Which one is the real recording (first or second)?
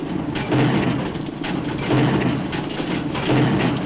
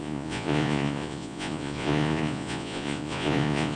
first